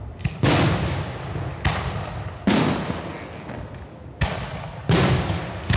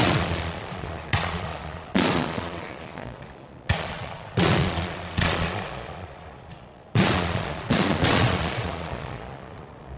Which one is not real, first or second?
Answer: second